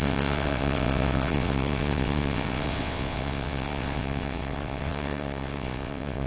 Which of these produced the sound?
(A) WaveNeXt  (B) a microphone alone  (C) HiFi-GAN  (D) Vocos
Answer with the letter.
A